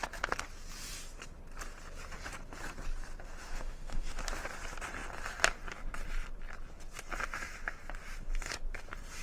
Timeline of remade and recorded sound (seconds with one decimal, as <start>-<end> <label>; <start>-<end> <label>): 0.0-3.4 recorded; 3.4-4.2 remade; 4.2-9.2 recorded